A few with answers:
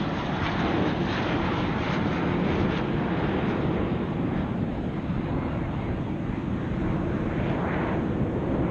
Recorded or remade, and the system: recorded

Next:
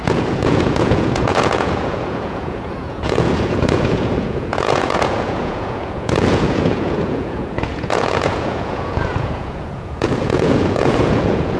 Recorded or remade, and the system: remade, vocoder, Vocos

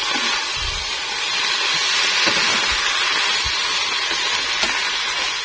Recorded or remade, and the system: recorded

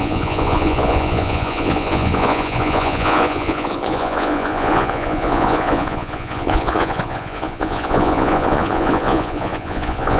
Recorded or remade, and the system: remade, vocoder, Vocos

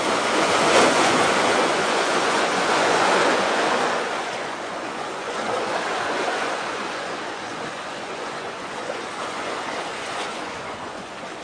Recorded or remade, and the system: remade, vocoder, Vocos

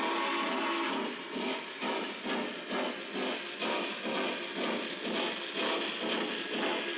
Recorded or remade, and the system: recorded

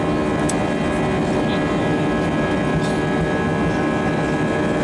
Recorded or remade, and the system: recorded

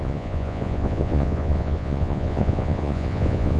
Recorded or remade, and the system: remade, vocoder, Vocos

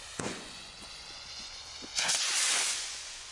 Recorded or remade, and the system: remade, vocoder, Vocos